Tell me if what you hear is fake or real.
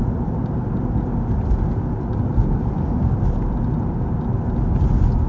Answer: real